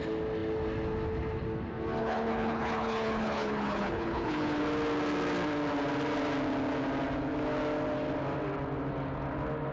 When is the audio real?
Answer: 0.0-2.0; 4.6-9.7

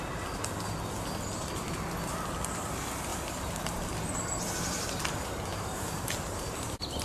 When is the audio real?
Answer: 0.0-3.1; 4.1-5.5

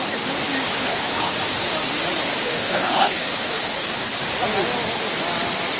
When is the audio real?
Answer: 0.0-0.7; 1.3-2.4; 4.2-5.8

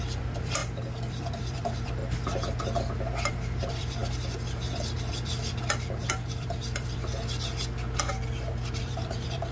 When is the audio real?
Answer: 0.6-1.1; 2.0-3.3; 4.0-5.1; 7.1-8.8

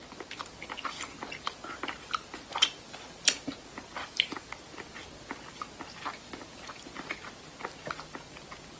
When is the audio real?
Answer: 0.0-4.0; 4.5-8.8

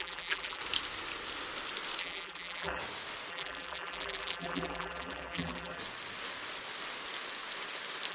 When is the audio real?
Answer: 0.6-2.0; 2.8-3.3; 5.8-8.1

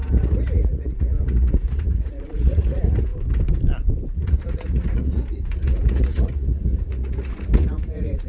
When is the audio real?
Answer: 3.1-4.2

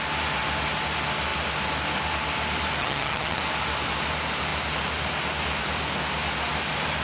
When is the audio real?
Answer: 0.0-2.8; 3.4-7.0